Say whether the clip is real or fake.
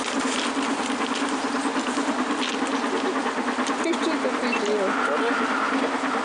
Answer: real